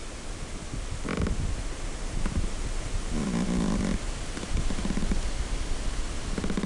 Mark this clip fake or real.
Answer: real